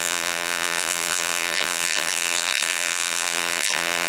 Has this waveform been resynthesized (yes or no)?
yes